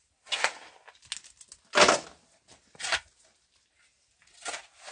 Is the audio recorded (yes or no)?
yes